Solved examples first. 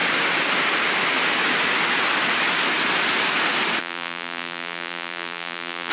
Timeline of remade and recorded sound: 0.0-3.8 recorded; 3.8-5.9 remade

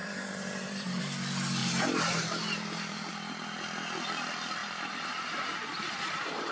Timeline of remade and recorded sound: 0.0-1.0 remade; 1.0-1.6 recorded; 1.6-3.1 remade; 3.1-4.6 recorded; 4.6-6.5 remade

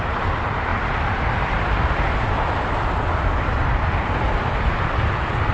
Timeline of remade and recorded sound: 0.0-0.7 recorded; 0.7-2.7 remade; 2.7-3.6 recorded; 3.6-5.5 remade

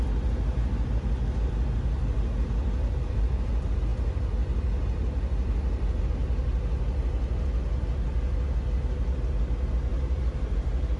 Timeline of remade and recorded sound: 0.0-2.9 recorded; 2.9-3.5 remade; 3.5-9.9 recorded; 9.9-11.0 remade